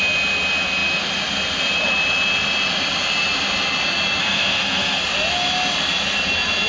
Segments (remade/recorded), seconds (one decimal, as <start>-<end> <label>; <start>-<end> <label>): 0.0-4.2 recorded; 4.2-5.0 remade; 5.0-6.7 recorded